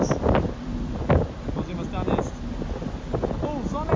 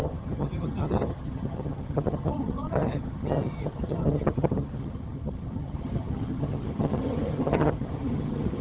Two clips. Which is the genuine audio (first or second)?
first